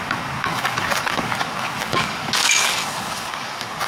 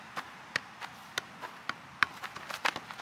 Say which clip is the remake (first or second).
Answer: first